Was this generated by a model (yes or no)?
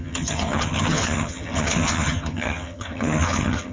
yes